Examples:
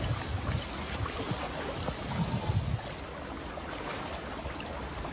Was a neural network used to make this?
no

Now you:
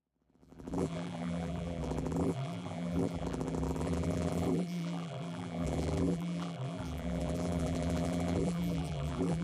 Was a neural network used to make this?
yes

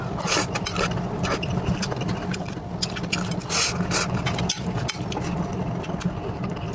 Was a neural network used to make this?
no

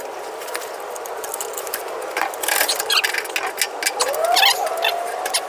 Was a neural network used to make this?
no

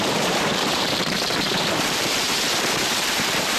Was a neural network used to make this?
yes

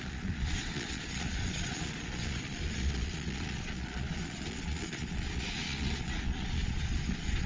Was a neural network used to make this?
yes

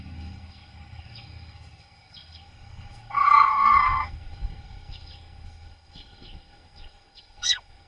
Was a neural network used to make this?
yes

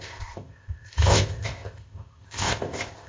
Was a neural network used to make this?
yes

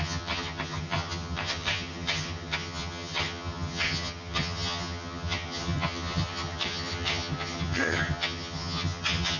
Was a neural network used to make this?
yes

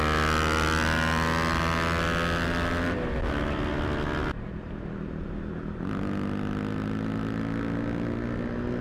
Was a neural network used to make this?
no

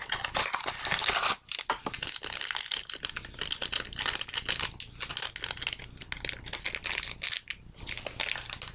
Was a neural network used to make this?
no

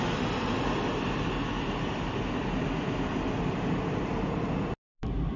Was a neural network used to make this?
no